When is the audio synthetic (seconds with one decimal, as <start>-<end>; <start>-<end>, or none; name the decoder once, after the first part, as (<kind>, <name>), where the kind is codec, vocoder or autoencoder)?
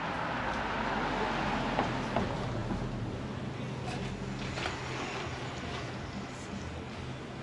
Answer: none